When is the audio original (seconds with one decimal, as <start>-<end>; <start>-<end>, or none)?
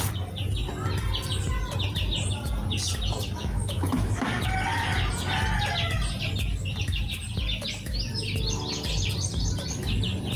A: 0.0-3.4; 4.4-10.4